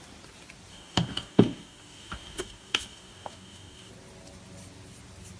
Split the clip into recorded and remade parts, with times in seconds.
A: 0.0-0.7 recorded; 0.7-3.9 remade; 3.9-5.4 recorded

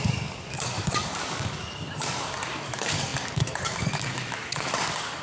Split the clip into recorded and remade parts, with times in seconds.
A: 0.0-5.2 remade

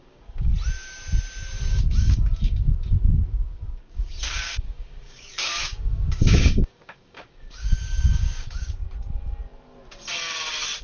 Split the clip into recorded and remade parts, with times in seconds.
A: 0.0-0.5 remade; 0.5-1.7 recorded; 1.7-8.8 remade; 8.8-10.8 recorded

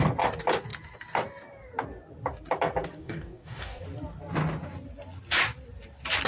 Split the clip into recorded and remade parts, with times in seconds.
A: 0.0-3.0 recorded; 3.0-3.8 remade; 3.8-6.3 recorded